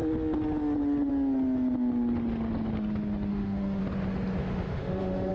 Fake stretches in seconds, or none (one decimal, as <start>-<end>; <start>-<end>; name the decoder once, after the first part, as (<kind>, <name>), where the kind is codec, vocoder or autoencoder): 3.3-3.8 (autoencoder, DAC-VAE); 4.4-5.3